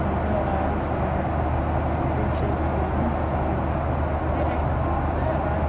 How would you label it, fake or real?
real